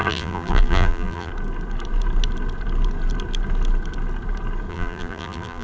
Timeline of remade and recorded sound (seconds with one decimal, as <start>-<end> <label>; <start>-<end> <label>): 0.0-1.3 remade; 1.3-4.7 recorded; 4.7-5.6 remade

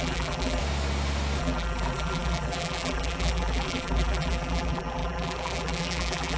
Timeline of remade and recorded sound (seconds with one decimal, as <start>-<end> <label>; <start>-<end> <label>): 0.0-0.6 remade; 0.6-1.4 recorded; 1.4-6.4 remade

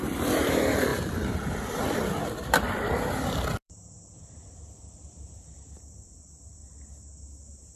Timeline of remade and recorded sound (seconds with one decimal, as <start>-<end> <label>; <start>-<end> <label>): 0.0-6.6 remade; 6.6-7.8 recorded

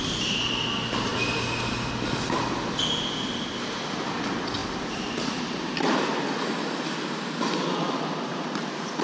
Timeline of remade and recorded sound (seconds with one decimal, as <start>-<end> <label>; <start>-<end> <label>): 0.0-4.6 recorded; 4.6-6.2 remade; 6.2-8.3 recorded; 8.3-9.0 remade

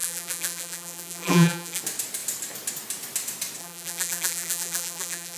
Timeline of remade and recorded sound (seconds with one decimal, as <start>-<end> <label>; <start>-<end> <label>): 0.0-1.8 remade; 1.8-3.6 recorded; 3.6-5.4 remade